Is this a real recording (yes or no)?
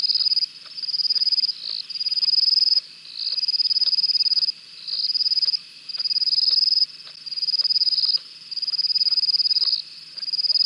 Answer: yes